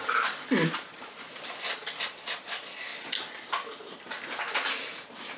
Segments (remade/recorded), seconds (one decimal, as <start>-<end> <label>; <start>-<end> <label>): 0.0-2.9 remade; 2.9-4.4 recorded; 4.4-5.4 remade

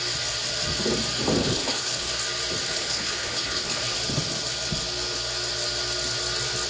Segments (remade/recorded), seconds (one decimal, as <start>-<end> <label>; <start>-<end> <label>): 0.0-1.4 recorded; 1.4-2.1 remade; 2.1-2.7 recorded; 2.7-3.8 remade; 3.8-6.7 recorded

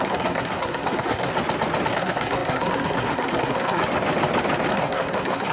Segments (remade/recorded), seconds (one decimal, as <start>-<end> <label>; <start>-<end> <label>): 0.0-1.3 remade; 1.3-1.9 recorded; 1.9-3.8 remade; 3.8-4.7 recorded; 4.7-5.5 remade